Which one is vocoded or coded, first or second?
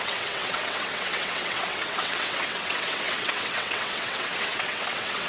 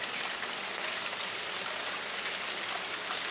first